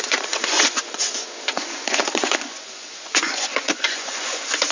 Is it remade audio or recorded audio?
remade